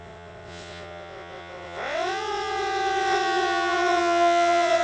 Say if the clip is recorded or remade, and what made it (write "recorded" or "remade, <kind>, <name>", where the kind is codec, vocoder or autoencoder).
remade, vocoder, WaveNeXt